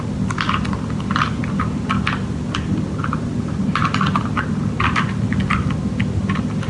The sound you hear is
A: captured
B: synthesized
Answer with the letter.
A